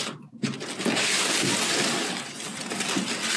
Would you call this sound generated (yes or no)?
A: no